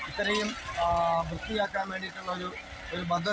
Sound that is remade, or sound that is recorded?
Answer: recorded